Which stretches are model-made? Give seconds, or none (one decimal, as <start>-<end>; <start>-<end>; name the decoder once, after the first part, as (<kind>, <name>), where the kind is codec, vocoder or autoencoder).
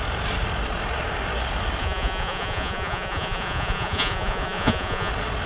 1.8-5.1 (vocoder, Vocos)